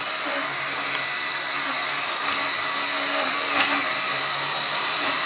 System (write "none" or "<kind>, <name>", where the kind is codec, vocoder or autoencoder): none